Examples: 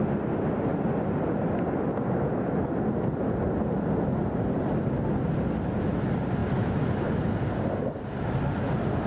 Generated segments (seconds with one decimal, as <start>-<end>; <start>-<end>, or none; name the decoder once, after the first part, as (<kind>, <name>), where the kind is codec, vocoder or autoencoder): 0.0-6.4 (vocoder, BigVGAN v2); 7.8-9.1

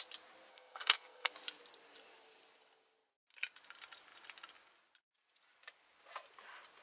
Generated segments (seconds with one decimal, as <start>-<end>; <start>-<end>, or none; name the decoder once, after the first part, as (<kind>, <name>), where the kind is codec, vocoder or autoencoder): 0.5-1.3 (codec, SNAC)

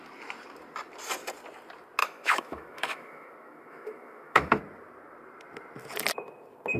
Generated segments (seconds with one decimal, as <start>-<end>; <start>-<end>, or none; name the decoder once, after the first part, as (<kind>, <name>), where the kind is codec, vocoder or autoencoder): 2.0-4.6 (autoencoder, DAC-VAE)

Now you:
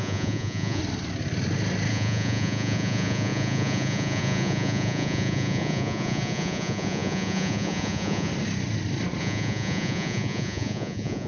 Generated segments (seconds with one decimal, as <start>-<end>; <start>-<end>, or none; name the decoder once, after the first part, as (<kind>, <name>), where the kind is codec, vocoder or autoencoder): 0.0-0.8 (vocoder, Vocos); 1.9-8.3; 9.2-11.3

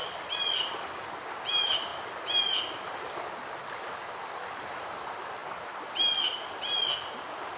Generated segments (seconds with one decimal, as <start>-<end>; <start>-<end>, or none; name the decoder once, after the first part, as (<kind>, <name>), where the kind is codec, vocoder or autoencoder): none

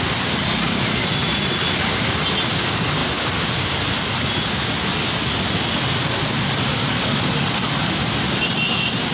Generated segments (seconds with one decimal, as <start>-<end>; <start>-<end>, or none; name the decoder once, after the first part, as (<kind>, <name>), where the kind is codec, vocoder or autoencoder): none

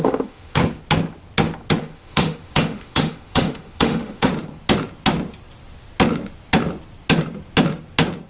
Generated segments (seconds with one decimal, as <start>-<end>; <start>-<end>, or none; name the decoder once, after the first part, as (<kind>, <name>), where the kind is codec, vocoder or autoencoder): 0.0-0.6 (autoencoder, DAC-VAE); 1.8-4.3